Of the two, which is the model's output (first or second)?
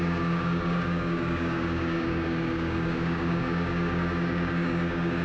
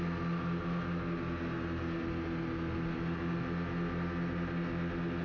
first